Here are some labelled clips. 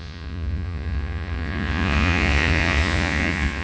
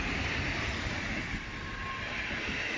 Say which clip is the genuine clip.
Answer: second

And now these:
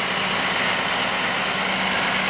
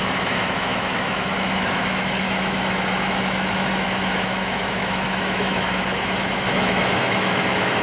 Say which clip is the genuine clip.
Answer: first